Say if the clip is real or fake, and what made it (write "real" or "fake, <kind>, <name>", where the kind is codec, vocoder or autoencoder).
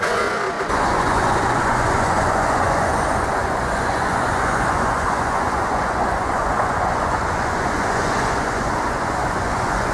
fake, vocoder, Vocos